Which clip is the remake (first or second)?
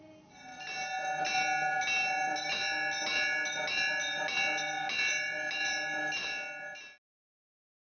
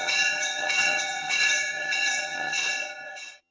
second